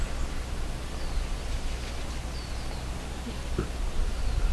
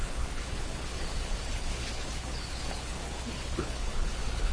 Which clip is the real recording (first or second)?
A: first